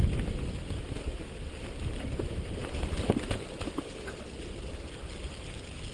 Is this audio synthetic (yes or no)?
no